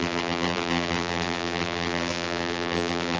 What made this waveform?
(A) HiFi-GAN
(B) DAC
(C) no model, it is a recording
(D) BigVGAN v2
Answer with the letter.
D